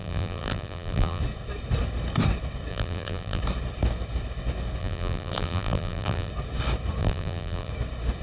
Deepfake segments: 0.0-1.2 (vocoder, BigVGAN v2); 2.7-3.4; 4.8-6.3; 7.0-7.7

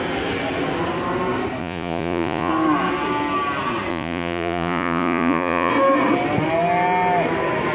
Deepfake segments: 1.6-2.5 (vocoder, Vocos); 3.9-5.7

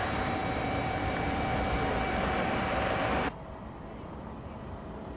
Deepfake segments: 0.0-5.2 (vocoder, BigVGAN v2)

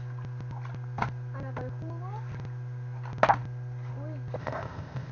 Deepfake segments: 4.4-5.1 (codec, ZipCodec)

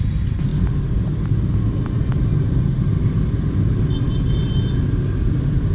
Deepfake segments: none

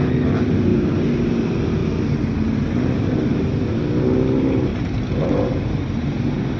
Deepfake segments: 0.7-1.3 (vocoder, BigVGAN v2); 4.7-6.6